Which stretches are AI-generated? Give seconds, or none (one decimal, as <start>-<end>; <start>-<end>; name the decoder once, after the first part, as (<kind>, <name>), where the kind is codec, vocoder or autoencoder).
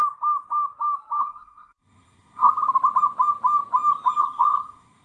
1.2-2.5 (codec, SNAC); 4.2-5.0